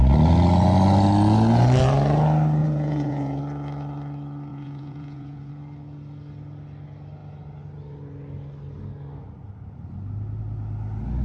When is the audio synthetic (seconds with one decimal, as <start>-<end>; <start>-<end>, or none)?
2.6-3.4; 4.5-5.5